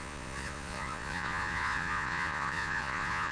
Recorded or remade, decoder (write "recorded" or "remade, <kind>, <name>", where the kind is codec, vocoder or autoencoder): remade, vocoder, Vocos